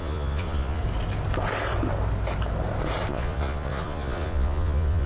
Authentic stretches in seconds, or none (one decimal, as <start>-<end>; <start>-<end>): 0.8-3.1